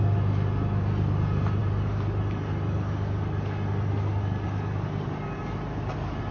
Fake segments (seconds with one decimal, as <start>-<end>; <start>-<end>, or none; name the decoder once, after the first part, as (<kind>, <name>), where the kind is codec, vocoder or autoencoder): none